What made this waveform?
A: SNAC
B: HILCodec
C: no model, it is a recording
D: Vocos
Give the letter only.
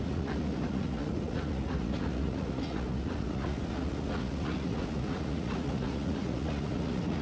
D